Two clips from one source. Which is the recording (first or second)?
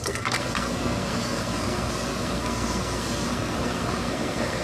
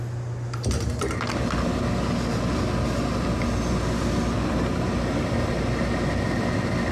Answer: second